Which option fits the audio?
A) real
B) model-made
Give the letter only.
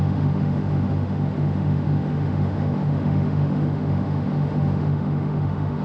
B